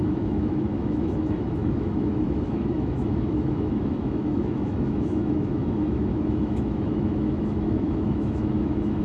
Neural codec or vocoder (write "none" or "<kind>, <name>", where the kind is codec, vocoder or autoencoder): autoencoder, DAC-VAE